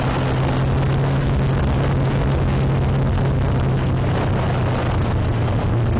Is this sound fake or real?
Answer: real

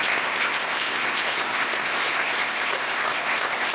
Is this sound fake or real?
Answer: fake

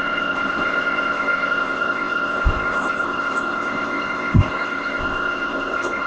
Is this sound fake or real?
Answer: fake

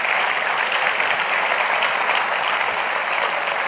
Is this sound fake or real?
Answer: real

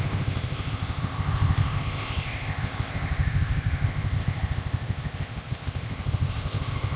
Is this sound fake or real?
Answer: fake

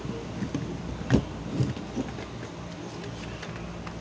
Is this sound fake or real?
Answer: real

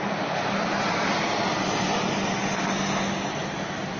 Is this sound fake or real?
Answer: real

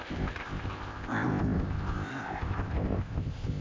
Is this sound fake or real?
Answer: fake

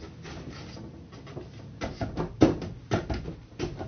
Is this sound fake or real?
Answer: real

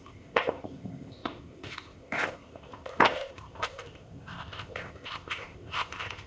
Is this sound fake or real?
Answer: fake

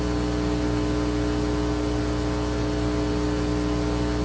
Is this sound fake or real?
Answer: real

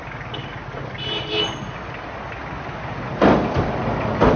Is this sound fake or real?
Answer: real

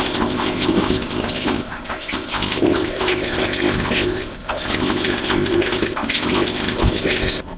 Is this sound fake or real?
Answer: fake